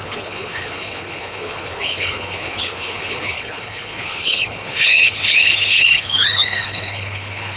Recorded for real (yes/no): no